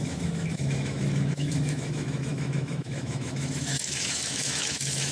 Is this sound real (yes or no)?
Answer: no